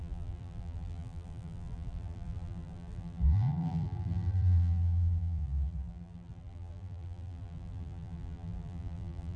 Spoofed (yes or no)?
yes